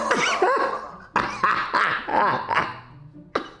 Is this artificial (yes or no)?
no